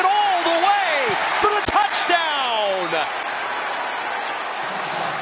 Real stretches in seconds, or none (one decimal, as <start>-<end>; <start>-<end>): 0.0-5.2